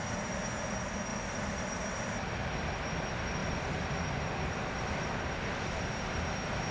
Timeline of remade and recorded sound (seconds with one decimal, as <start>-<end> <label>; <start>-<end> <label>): 0.0-1.1 recorded; 1.1-2.2 remade; 2.2-3.4 recorded; 3.4-5.8 remade; 5.8-6.7 recorded